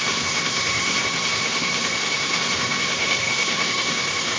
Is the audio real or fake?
fake